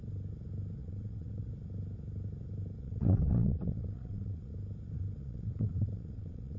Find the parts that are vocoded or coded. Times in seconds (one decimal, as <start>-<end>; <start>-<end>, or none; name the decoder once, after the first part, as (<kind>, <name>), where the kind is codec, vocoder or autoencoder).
0.8-1.5 (vocoder, WaveNeXt); 2.8-4.5; 5.2-6.6